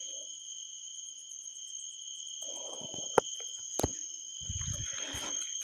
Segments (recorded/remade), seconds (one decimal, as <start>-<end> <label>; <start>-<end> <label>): 0.0-0.9 recorded; 0.9-4.3 remade; 4.3-5.6 recorded